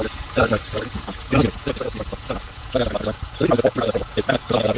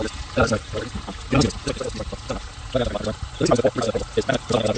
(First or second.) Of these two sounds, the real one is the second